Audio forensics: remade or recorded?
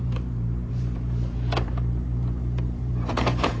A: remade